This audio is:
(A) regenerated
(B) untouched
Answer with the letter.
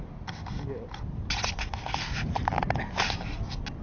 B